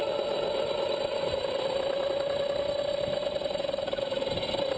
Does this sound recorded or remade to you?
recorded